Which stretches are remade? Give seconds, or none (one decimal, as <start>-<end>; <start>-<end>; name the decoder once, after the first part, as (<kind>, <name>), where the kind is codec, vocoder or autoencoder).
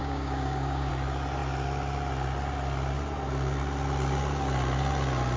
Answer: 0.0-0.9 (codec, DAC)